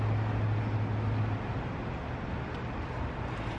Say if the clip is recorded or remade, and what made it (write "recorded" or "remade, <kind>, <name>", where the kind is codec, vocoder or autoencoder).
recorded